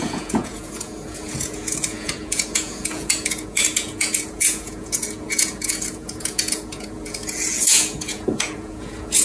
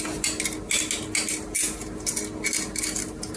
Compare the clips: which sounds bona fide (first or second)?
second